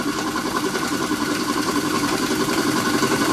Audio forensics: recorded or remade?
remade